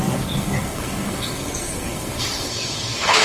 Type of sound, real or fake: fake